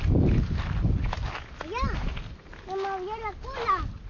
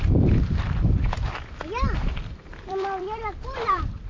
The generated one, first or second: second